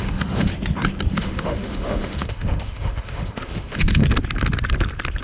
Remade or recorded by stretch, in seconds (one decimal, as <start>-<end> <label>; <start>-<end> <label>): 0.0-0.5 remade; 0.5-1.1 recorded; 1.1-4.0 remade; 4.0-5.2 recorded